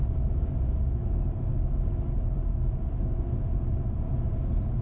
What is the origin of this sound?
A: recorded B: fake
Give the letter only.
A